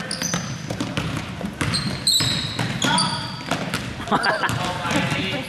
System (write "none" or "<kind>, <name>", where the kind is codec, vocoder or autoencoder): none